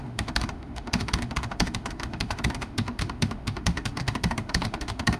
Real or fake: fake